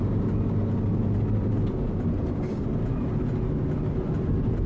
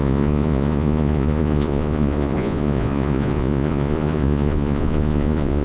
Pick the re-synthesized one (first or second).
second